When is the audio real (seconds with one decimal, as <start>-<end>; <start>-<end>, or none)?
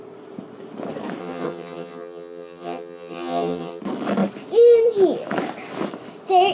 0.0-1.2; 3.8-6.5